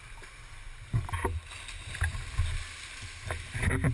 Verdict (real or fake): real